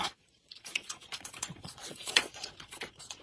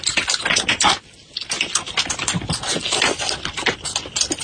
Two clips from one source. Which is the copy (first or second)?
first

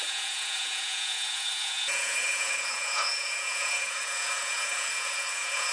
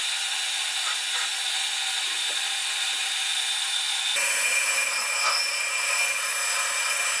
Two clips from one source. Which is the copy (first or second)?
first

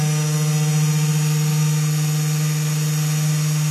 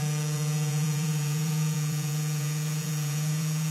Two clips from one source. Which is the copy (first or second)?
second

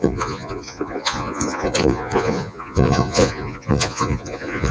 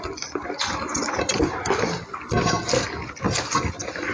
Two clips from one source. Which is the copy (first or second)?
first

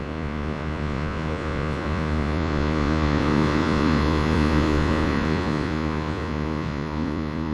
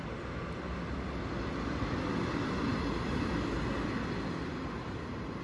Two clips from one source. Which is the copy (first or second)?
first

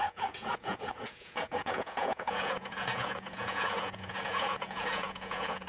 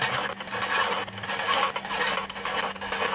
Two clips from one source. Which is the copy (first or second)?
first